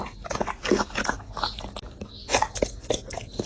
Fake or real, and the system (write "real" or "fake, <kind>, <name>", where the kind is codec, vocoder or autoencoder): real